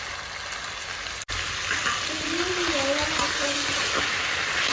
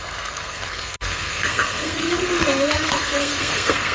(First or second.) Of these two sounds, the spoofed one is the second